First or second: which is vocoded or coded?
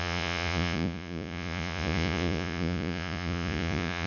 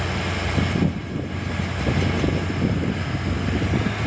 first